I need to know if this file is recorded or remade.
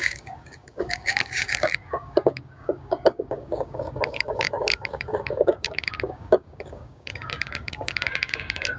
remade